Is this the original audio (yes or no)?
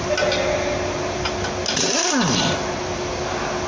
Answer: yes